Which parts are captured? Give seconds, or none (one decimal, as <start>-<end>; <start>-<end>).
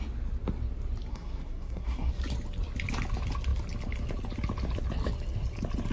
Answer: 0.0-1.1; 2.1-5.9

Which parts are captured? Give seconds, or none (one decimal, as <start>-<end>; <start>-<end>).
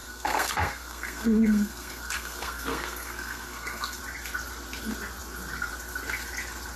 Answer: 4.0-6.8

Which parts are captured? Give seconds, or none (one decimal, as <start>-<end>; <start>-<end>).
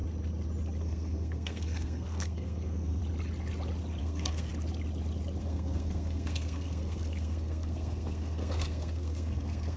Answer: 0.0-0.8; 3.0-4.0; 4.5-5.4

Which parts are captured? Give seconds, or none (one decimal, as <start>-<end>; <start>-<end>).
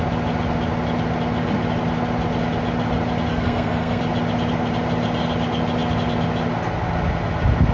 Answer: 0.0-3.3; 4.0-7.7